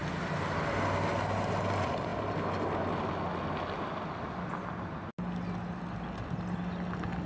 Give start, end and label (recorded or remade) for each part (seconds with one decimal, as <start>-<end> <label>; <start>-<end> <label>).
0.0-7.3 recorded